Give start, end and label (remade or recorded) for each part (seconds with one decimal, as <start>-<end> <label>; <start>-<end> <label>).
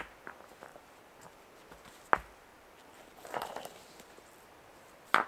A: 0.0-0.7 recorded; 0.7-1.5 remade; 1.5-2.5 recorded; 2.5-4.0 remade; 4.0-5.3 recorded